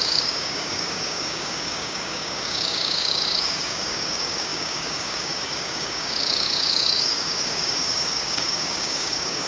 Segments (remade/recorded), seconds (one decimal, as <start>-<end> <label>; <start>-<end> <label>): 0.0-9.5 remade